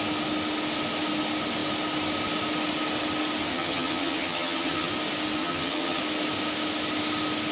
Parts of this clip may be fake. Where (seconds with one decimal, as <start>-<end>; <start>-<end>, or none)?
3.5-4.9; 5.4-6.0